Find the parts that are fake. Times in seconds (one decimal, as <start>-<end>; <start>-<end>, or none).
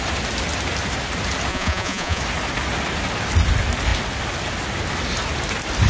1.5-2.2